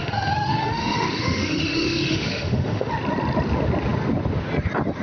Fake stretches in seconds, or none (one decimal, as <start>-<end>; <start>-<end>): 0.0-2.9